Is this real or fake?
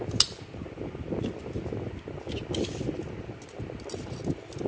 real